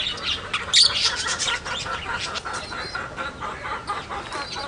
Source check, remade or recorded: recorded